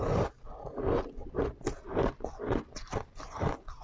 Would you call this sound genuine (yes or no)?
yes